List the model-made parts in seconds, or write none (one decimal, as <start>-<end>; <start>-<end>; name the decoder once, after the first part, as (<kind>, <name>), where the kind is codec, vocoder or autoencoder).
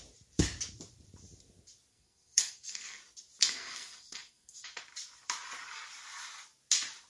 1.9-3.0 (codec, SNAC); 3.4-4.8